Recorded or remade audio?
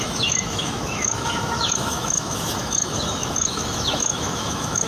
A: remade